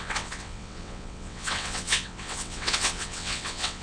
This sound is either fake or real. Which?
fake